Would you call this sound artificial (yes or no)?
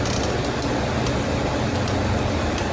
no